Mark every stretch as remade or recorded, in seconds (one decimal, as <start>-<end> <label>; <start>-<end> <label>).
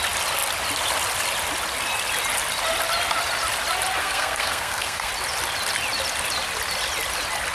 0.0-4.0 recorded; 4.0-5.1 remade; 5.1-7.5 recorded